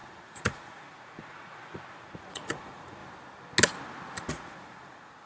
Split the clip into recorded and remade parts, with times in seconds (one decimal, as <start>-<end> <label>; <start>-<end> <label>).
0.0-3.0 remade; 3.0-4.3 recorded; 4.3-5.3 remade